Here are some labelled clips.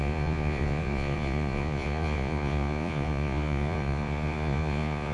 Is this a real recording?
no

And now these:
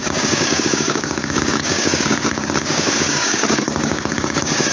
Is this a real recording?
no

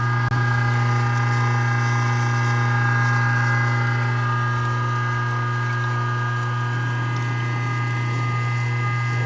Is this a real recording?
yes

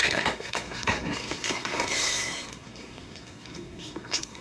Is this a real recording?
no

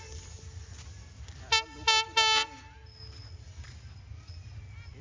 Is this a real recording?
yes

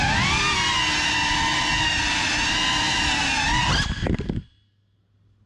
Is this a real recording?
yes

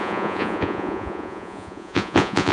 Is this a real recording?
no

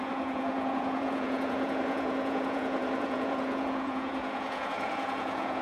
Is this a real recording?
no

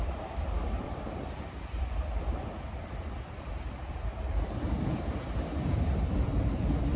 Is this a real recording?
no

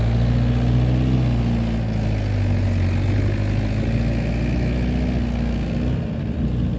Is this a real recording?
yes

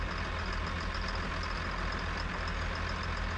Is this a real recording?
yes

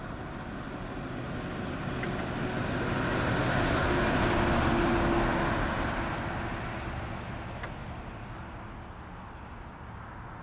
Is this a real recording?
yes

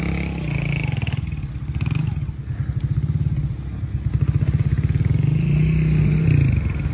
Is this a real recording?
yes